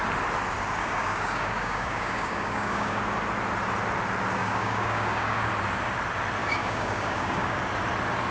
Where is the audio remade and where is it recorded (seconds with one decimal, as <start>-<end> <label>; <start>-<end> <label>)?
0.0-0.8 recorded; 0.8-3.0 remade; 3.0-4.4 recorded; 4.4-5.5 remade; 5.5-6.4 recorded; 6.4-7.6 remade; 7.6-8.3 recorded